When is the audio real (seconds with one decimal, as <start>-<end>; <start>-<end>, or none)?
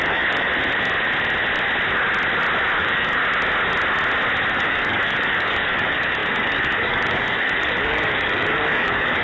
0.5-2.8; 3.2-4.5